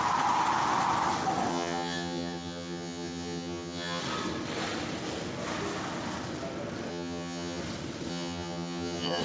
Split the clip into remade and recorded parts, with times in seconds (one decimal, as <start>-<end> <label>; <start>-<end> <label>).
0.0-1.5 recorded; 1.5-4.0 remade; 4.0-6.9 recorded; 6.9-7.6 remade; 7.6-8.1 recorded; 8.1-9.2 remade